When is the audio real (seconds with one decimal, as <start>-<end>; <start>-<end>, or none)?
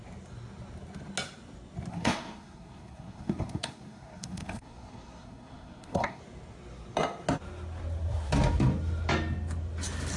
0.0-1.9; 6.2-10.2